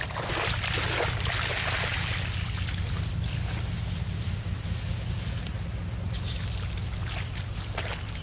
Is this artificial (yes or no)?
no